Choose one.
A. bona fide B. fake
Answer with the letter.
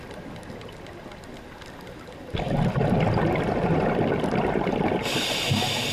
A